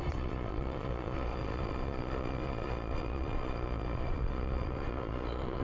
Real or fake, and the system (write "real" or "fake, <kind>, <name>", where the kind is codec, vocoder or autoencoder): fake, vocoder, Vocos